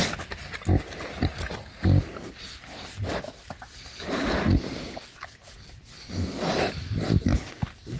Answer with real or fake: real